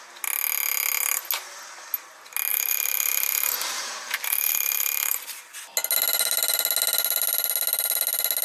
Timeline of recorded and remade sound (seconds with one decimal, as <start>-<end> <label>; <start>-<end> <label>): 0.0-2.5 recorded; 2.5-5.3 remade; 5.3-8.4 recorded